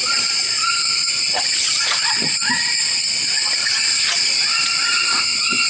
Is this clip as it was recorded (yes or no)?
no